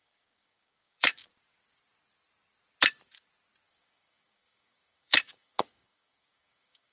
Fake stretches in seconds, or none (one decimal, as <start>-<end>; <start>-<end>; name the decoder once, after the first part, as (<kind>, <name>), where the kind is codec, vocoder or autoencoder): 0.0-1.2 (codec, DAC); 3.7-6.9